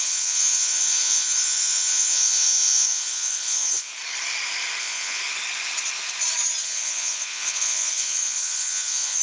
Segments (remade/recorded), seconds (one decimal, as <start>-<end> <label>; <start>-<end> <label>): 0.0-3.9 remade; 3.9-4.8 recorded; 4.8-5.2 remade; 5.2-6.6 recorded; 6.6-9.2 remade